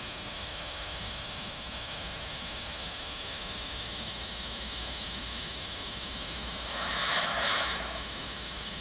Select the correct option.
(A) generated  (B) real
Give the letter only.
A